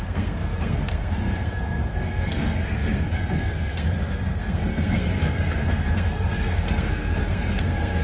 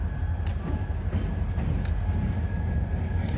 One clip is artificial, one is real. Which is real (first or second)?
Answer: second